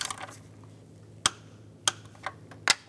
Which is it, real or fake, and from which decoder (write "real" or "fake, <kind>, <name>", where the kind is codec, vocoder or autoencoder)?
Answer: real